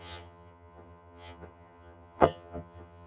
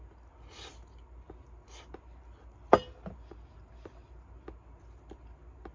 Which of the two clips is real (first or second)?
second